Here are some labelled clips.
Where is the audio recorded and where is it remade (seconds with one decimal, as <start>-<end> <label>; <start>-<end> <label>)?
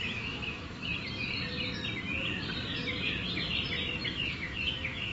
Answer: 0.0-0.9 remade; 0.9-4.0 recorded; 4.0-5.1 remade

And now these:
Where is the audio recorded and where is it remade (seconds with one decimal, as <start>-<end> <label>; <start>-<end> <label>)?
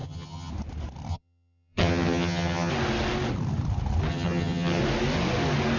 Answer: 0.0-0.5 remade; 0.5-1.1 recorded; 1.1-2.7 remade; 2.7-4.1 recorded; 4.1-4.8 remade; 4.8-5.8 recorded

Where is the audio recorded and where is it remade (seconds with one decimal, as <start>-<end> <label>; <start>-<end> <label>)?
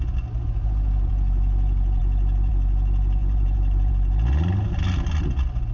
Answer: 0.0-3.2 recorded; 3.2-3.9 remade; 3.9-5.7 recorded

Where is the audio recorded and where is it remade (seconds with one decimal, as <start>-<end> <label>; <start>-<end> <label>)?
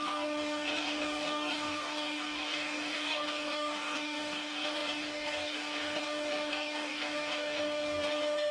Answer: 0.0-8.5 remade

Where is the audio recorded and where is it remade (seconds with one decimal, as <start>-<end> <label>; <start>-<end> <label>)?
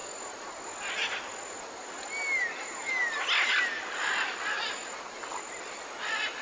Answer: 0.0-6.4 recorded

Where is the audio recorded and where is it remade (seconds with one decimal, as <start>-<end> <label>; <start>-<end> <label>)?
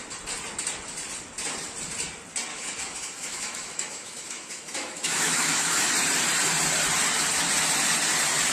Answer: 0.0-2.5 recorded; 2.5-5.9 remade; 5.9-8.5 recorded